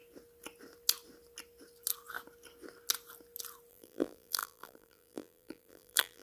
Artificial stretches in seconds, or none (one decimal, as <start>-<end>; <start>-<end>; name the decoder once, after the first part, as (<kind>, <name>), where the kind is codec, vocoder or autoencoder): 3.7-6.2 (vocoder, BigVGAN v2)